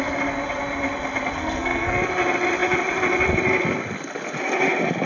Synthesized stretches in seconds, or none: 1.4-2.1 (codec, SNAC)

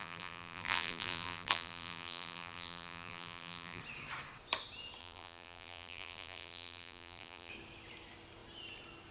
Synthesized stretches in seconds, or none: 0.0-3.8 (vocoder, BigVGAN v2); 5.0-7.5

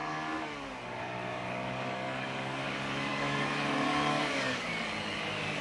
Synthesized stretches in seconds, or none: 0.0-5.6 (codec, DAC)

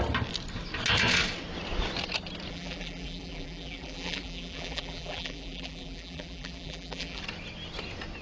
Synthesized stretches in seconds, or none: 2.5-7.2 (vocoder, BigVGAN v2)

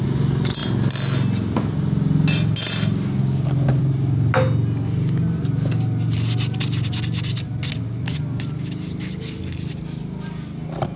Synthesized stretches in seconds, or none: none

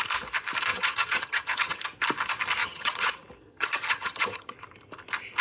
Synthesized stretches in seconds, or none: 0.7-1.8 (vocoder, HiFi-GAN); 2.6-3.1; 3.5-4.5

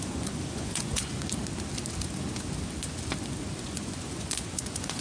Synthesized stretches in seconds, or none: 0.0-1.2 (vocoder, Vocos); 3.6-5.0

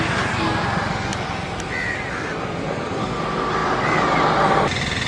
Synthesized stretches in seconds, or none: 2.4-3.2 (codec, SNAC)